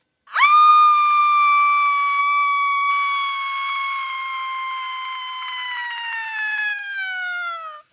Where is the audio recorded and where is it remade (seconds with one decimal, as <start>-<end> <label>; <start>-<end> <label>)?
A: 0.0-2.2 recorded; 2.2-2.9 remade; 2.9-7.9 recorded